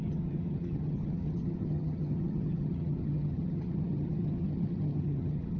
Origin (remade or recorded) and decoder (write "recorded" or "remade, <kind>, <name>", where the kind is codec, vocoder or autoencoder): remade, vocoder, HiFi-GAN